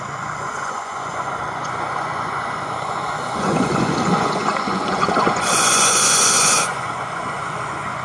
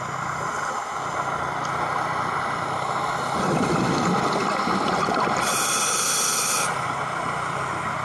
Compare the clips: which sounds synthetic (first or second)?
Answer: first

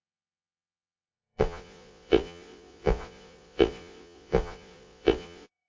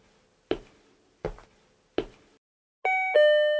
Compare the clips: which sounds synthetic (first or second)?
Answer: first